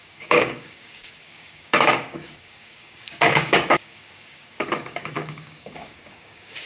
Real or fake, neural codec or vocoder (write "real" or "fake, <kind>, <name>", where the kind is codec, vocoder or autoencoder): fake, codec, DAC